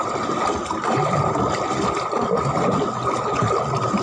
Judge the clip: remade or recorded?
recorded